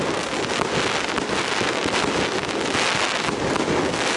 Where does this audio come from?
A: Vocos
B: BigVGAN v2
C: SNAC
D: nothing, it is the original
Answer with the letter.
D